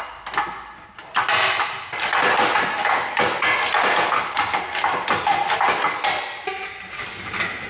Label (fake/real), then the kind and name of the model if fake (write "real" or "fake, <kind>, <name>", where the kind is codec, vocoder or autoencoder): real